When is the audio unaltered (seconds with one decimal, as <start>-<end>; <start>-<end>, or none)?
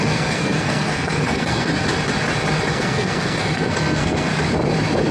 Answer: 1.7-2.7; 4.3-5.1